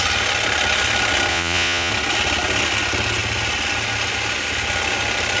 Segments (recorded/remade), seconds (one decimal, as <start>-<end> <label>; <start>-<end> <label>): 0.0-1.3 recorded; 1.3-1.9 remade; 1.9-5.4 recorded